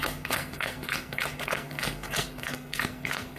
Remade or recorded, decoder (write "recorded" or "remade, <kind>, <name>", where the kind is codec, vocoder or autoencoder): remade, codec, SNAC